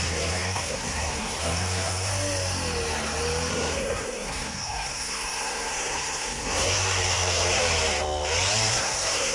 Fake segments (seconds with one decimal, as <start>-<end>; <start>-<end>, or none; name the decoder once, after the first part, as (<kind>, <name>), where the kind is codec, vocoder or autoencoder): 0.0-2.1 (codec, SNAC); 3.5-7.6; 8.7-9.3